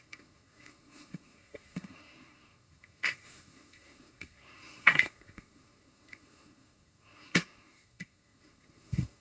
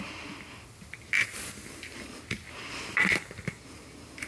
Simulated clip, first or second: first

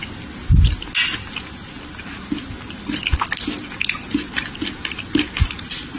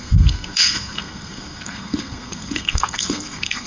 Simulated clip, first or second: second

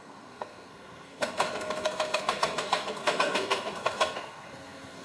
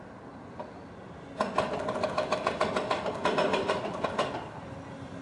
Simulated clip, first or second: first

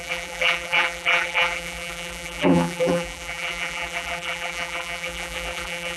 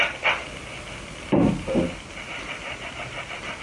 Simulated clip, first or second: first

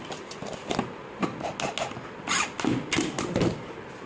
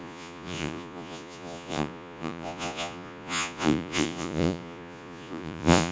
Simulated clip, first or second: second